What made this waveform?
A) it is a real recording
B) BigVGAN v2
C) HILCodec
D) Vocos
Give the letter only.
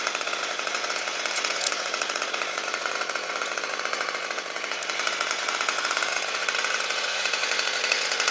D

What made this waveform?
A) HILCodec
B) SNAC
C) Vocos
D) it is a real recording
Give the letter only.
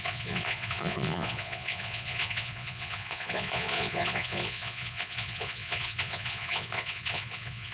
C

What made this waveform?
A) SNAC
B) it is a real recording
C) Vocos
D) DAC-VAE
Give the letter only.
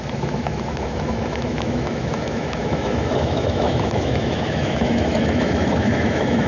D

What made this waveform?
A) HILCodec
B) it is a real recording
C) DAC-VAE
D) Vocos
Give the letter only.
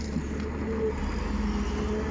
B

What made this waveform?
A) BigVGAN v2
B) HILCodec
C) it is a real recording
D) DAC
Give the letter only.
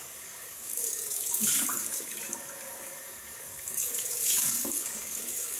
D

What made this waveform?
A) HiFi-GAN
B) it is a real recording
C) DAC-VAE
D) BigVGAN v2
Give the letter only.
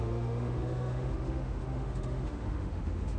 C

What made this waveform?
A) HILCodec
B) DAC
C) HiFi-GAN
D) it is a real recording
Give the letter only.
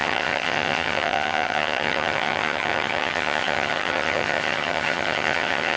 C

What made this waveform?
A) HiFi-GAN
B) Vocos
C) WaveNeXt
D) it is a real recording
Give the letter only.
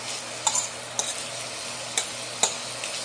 D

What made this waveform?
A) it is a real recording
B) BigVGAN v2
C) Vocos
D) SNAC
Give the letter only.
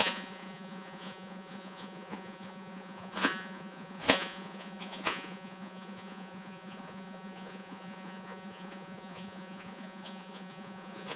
C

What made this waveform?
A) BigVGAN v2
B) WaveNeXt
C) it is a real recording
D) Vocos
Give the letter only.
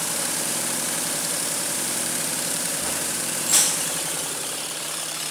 A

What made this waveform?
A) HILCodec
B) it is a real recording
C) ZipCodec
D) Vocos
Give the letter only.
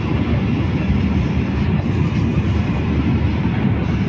B